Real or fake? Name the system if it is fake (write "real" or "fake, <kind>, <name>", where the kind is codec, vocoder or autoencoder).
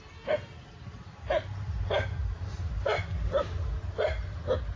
real